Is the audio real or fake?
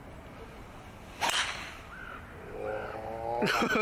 real